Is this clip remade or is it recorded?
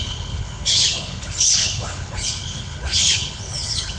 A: remade